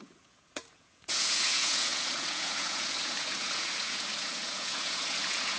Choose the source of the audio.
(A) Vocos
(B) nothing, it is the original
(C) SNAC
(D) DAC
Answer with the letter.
A